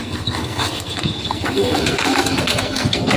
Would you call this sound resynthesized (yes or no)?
yes